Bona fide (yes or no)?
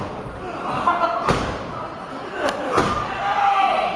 yes